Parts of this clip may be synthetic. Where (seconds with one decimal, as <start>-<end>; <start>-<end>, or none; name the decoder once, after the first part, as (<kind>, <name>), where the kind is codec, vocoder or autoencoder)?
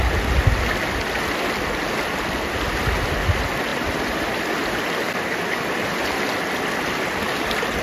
3.7-4.8 (vocoder, BigVGAN v2)